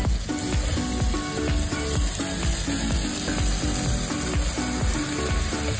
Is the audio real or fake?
real